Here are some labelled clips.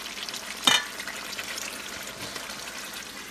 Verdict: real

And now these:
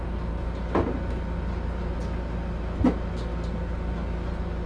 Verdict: real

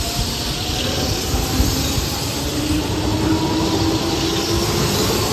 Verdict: real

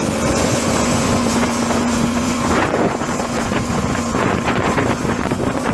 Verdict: fake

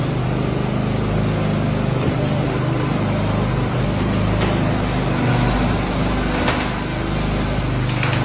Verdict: real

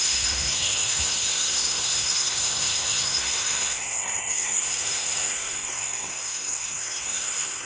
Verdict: fake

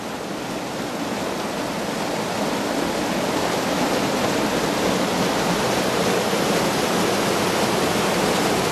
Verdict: real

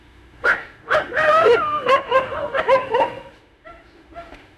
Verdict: fake